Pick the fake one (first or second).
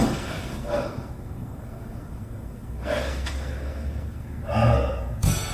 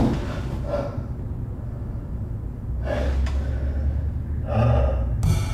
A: first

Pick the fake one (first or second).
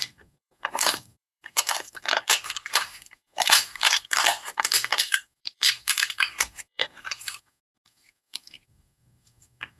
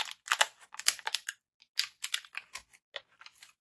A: first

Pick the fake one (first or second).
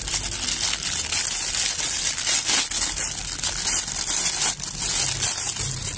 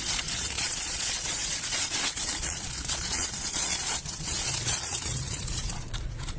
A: second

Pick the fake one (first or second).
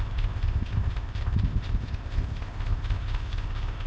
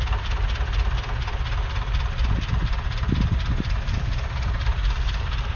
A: first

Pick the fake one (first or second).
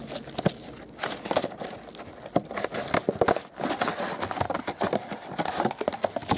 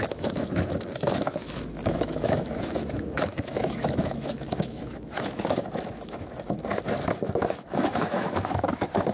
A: second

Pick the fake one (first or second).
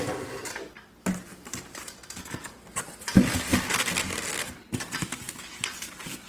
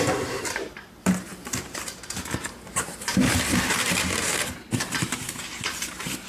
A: second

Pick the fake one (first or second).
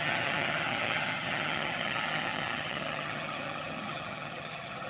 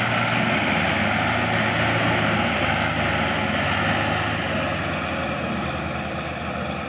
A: first